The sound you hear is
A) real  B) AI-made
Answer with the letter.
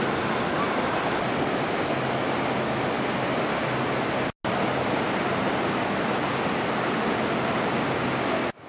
A